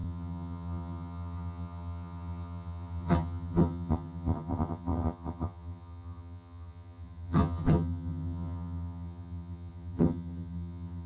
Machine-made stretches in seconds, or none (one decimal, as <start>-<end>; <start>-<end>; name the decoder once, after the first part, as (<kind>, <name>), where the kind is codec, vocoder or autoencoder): 0.0-11.1 (vocoder, HiFi-GAN)